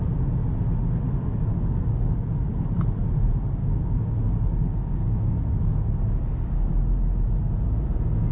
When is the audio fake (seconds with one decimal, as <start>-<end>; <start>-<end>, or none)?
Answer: 1.3-2.5; 3.6-6.6